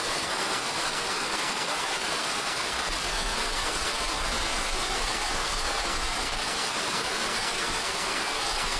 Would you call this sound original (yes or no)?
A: no